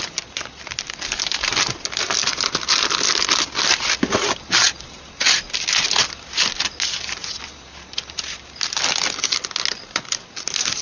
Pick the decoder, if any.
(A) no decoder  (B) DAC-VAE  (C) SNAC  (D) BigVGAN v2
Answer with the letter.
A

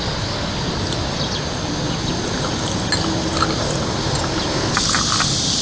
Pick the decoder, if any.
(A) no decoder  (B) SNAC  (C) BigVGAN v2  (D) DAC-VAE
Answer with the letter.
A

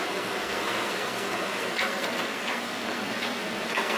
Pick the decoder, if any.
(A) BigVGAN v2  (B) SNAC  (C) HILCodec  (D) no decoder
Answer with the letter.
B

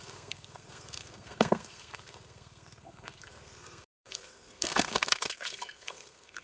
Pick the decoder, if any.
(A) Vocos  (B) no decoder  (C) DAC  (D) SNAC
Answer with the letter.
D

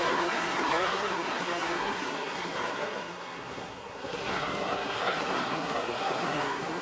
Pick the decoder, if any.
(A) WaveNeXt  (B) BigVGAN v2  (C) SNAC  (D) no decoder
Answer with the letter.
C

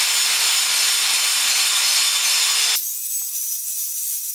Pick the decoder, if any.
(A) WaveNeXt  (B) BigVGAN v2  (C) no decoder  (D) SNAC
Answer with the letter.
C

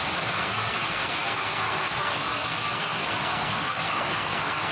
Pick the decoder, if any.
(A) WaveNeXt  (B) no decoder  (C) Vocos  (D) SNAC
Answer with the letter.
D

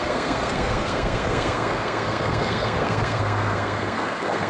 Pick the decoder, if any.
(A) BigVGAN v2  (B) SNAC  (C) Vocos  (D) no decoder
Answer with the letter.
B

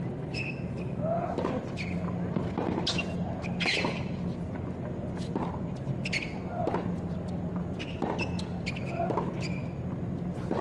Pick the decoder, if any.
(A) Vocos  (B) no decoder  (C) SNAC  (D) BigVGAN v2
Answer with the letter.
B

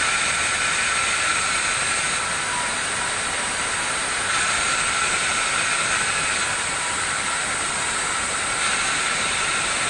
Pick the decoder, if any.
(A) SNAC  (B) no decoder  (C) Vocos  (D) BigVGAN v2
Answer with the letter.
B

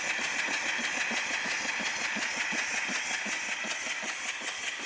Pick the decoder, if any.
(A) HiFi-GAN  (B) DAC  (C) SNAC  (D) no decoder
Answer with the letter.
D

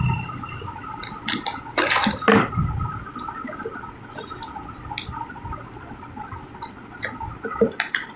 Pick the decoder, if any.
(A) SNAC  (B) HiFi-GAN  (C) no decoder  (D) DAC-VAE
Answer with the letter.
C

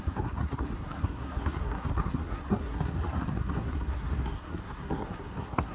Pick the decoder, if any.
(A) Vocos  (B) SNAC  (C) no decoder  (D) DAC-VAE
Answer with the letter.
B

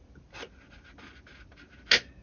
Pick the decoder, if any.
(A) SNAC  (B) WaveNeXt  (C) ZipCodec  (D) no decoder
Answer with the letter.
D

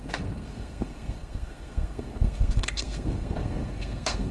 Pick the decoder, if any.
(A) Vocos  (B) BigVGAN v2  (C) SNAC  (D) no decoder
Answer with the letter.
C